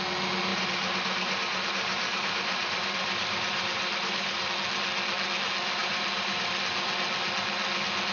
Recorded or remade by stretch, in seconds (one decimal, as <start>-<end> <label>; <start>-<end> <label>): 0.0-0.5 recorded; 0.5-4.5 remade; 4.5-5.8 recorded; 5.8-6.5 remade; 6.5-8.1 recorded